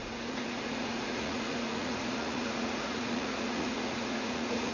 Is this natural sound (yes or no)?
no